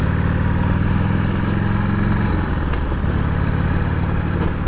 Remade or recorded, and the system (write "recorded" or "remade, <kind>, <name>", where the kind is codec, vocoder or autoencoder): recorded